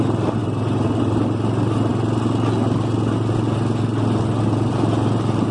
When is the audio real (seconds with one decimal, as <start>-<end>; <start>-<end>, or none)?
0.0-0.4; 1.0-5.5